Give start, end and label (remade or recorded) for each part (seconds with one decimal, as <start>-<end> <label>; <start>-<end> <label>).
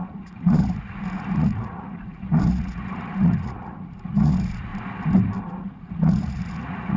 0.0-4.7 remade; 4.7-5.4 recorded; 5.4-7.0 remade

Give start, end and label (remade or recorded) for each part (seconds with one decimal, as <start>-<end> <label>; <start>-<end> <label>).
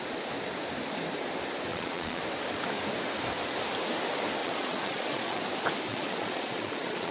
0.0-1.7 recorded; 1.7-2.2 remade; 2.2-4.4 recorded; 4.4-5.4 remade; 5.4-5.9 recorded; 5.9-7.1 remade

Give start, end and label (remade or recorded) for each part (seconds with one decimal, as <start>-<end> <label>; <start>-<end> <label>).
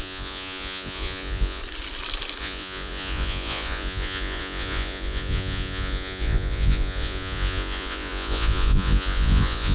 0.0-1.6 remade; 1.6-2.4 recorded; 2.4-9.7 remade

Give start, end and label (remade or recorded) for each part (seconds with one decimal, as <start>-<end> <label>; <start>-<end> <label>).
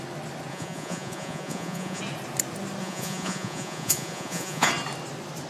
0.0-0.5 recorded; 0.5-2.0 remade; 2.0-2.8 recorded; 2.8-4.7 remade; 4.7-5.5 recorded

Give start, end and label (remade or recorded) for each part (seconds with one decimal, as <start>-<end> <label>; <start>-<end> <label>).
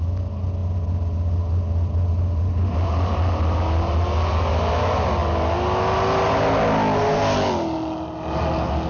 0.0-8.9 recorded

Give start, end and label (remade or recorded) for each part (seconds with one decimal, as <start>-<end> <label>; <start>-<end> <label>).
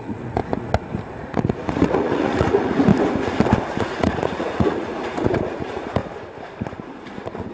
0.0-0.4 remade; 0.4-1.2 recorded; 1.2-2.9 remade; 2.9-3.8 recorded; 3.8-6.0 remade; 6.0-7.5 recorded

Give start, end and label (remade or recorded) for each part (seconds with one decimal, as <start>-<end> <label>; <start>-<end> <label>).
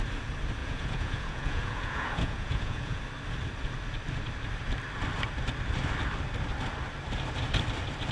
0.0-0.6 recorded; 0.6-3.0 remade; 3.0-8.1 recorded